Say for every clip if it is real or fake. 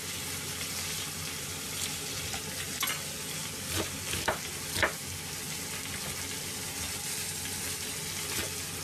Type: real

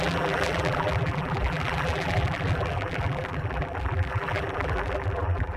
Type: fake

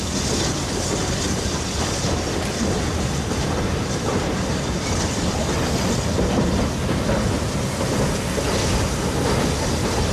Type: real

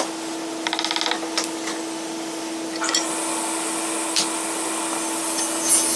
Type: real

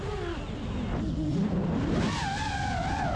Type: real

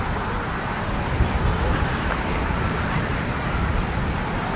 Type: fake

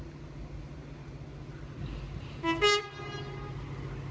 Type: real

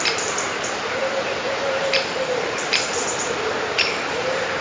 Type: fake